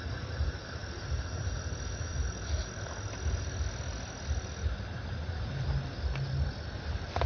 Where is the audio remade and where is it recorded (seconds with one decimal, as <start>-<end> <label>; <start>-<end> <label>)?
0.0-7.3 recorded